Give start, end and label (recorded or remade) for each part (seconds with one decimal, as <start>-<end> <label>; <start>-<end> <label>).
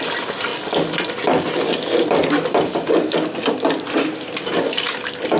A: 0.0-5.4 recorded